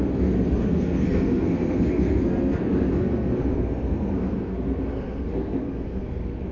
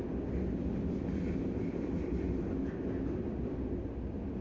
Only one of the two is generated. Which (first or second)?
first